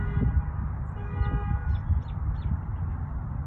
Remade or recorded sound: recorded